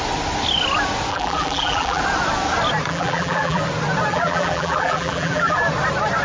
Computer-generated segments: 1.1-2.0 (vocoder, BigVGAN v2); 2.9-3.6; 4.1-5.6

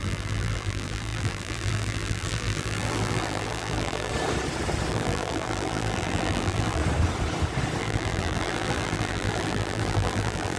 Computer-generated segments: 0.0-4.1 (vocoder, BigVGAN v2); 4.9-6.8; 7.8-10.6

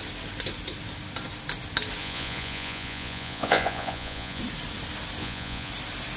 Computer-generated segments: 2.0-4.4 (vocoder, Vocos); 5.2-5.7

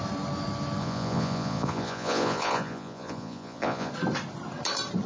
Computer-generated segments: 0.8-3.9 (vocoder, Vocos)